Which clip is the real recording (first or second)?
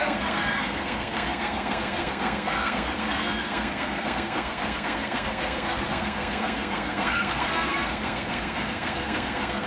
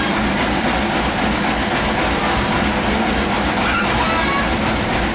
second